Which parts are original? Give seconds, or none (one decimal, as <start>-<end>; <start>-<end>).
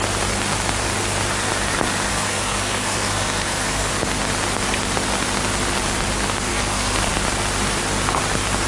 0.0-2.1; 3.9-6.5; 7.1-8.7